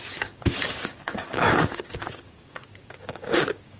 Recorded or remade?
remade